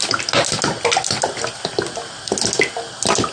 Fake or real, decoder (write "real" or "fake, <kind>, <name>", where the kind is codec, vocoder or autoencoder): real